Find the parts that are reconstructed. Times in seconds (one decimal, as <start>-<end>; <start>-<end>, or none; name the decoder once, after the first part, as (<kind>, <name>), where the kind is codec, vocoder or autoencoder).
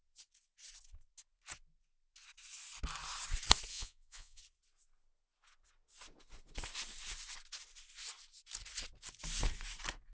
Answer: 3.7-4.4 (vocoder, Vocos)